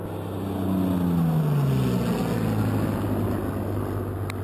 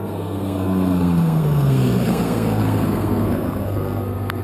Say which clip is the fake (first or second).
second